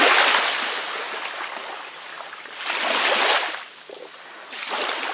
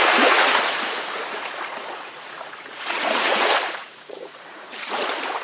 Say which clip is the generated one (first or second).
second